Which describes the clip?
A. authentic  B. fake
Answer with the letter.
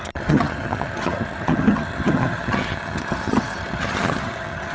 B